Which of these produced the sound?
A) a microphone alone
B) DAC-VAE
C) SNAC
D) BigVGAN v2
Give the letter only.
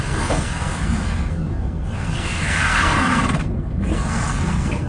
C